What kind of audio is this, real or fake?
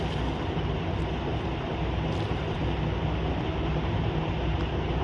real